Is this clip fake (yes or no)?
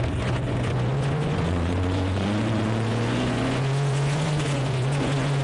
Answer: yes